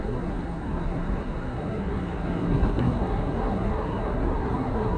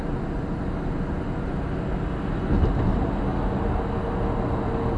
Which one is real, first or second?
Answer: second